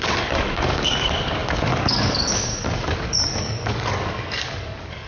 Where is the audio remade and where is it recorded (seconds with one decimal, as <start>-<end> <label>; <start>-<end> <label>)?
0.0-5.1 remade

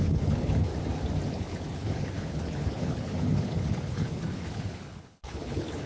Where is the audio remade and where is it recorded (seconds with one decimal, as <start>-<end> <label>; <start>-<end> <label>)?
0.0-0.7 remade; 0.7-1.3 recorded; 1.3-5.9 remade

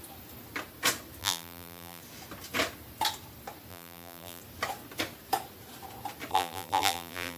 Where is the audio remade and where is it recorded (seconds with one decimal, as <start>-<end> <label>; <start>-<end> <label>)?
0.0-1.2 recorded; 1.2-2.0 remade; 2.0-3.7 recorded; 3.7-4.4 remade; 4.4-6.3 recorded; 6.3-7.4 remade

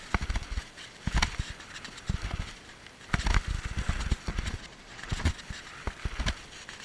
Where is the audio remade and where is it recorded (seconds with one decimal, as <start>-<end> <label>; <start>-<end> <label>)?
0.0-4.3 recorded; 4.3-5.3 remade; 5.3-6.8 recorded

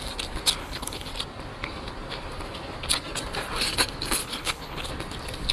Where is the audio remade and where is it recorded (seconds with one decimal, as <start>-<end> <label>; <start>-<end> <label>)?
0.0-0.6 recorded; 0.6-1.1 remade; 1.1-4.2 recorded; 4.2-4.9 remade; 4.9-5.5 recorded

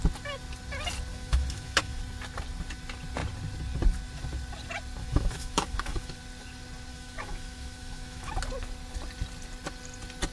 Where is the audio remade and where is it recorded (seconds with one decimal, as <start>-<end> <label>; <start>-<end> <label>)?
0.0-1.1 recorded; 1.1-2.0 remade; 2.0-5.0 recorded; 5.0-6.2 remade; 6.2-6.9 recorded; 6.9-8.3 remade; 8.3-10.3 recorded